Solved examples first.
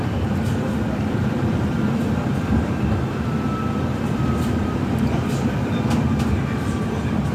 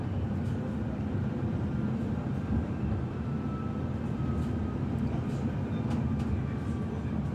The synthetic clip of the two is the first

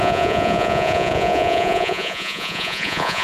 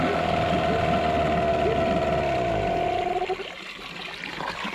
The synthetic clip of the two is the first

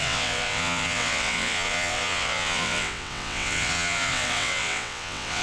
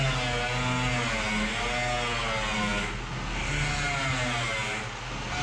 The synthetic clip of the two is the first